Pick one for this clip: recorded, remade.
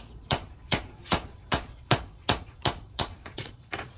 remade